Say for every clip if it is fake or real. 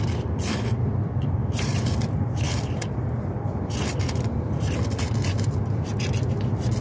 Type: fake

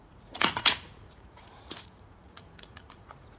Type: fake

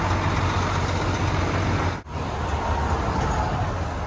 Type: real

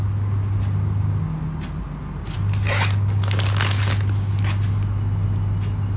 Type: real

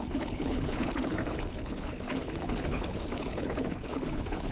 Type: fake